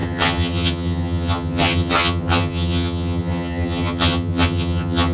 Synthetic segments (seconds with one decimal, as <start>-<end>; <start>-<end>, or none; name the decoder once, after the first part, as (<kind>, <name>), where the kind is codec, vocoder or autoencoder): 0.0-5.1 (vocoder, HiFi-GAN)